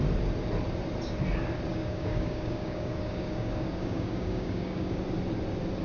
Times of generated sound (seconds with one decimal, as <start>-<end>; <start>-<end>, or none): 1.7-5.0